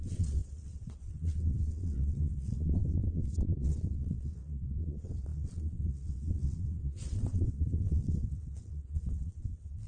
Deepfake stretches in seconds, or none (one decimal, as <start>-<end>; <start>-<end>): 0.0-9.9